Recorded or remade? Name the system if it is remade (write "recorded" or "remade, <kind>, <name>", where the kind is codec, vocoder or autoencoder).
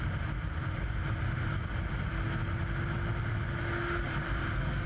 recorded